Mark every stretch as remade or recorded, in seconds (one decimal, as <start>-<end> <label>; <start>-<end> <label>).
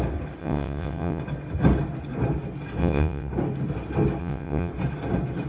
0.0-0.4 recorded; 0.4-1.2 remade; 1.2-2.8 recorded; 2.8-3.3 remade; 3.3-4.2 recorded; 4.2-4.7 remade; 4.7-5.5 recorded